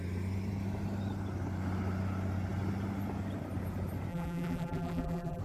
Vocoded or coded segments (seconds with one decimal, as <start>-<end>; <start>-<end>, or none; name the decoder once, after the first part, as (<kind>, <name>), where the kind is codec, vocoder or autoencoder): 4.1-5.4 (vocoder, BigVGAN v2)